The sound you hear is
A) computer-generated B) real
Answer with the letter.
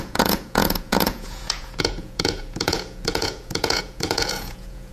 A